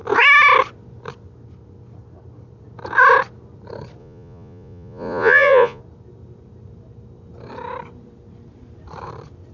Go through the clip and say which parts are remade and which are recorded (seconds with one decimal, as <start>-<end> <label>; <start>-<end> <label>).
0.0-4.0 recorded; 4.0-5.8 remade; 5.8-9.5 recorded